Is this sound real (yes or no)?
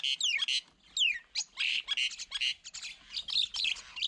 yes